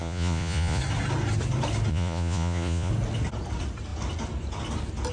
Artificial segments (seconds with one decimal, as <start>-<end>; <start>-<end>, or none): 0.0-0.8; 1.9-2.9